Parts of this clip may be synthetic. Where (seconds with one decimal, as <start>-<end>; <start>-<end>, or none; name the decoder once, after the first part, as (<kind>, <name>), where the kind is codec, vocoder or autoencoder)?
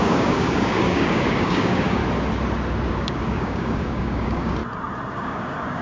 0.0-2.0 (codec, DAC); 2.9-4.6; 5.1-5.8